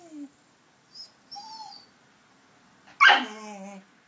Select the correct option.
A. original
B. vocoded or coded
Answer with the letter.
A